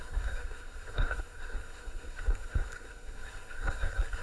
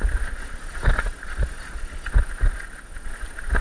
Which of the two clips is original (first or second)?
second